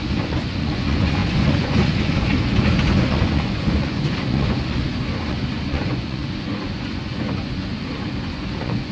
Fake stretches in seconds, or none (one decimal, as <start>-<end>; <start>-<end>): 0.0-8.9